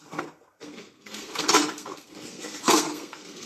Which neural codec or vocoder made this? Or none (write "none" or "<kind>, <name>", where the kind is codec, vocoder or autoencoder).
codec, SNAC